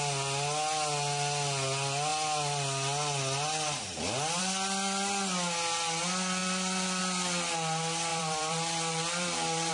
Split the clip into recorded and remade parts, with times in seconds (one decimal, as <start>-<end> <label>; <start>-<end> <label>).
0.0-6.4 recorded; 6.4-7.0 remade; 7.0-8.1 recorded; 8.1-9.7 remade